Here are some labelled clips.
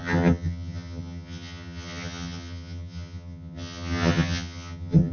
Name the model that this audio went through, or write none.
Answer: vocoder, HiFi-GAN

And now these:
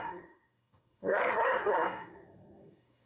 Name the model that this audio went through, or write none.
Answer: codec, SNAC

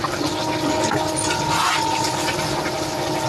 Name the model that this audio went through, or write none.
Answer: none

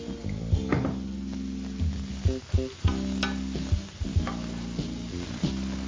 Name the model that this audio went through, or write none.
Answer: none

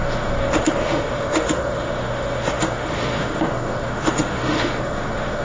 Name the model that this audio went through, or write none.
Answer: autoencoder, DAC-VAE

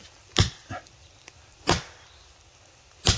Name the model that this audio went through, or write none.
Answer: none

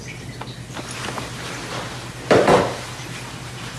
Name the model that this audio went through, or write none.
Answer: none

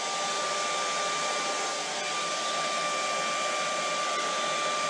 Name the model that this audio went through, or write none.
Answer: none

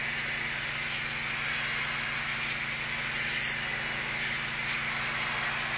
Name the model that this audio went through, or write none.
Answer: none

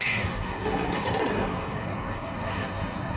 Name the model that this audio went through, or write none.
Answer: codec, SNAC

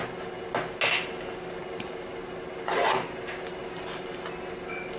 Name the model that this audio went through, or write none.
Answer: none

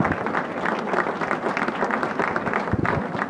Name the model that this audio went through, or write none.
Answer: none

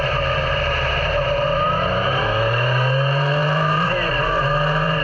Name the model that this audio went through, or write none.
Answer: vocoder, BigVGAN v2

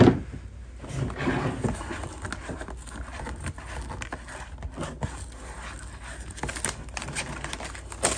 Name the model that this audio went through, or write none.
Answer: none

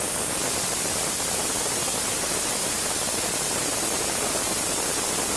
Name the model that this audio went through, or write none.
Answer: none